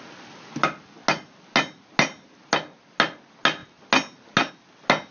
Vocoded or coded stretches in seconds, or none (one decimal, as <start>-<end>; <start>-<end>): none